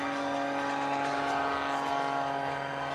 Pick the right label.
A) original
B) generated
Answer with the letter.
A